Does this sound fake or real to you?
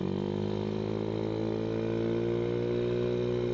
real